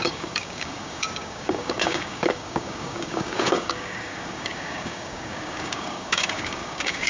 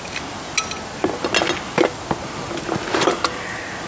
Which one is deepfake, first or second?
first